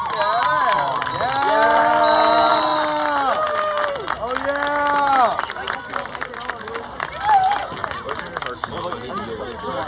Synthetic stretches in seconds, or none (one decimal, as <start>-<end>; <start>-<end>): 7.8-8.3